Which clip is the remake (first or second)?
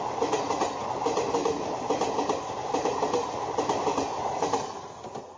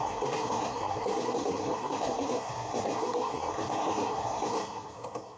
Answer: second